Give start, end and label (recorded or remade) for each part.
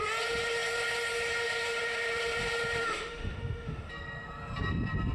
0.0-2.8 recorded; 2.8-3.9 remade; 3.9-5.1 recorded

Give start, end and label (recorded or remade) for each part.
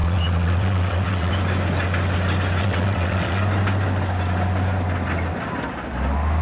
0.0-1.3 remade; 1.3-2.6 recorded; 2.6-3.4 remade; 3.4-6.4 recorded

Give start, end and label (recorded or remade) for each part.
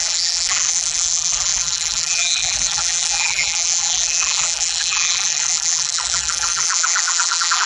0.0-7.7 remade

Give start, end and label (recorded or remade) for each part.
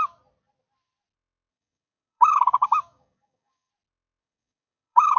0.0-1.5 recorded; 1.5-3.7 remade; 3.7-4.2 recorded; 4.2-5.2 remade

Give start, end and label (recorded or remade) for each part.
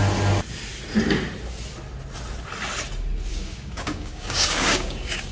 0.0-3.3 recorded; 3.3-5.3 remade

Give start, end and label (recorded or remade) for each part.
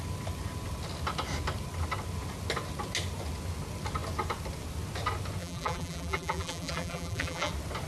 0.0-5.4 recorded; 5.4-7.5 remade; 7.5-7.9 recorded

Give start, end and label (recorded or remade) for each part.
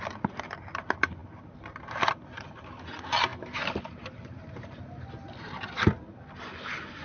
0.0-3.3 recorded; 3.3-5.8 remade; 5.8-7.0 recorded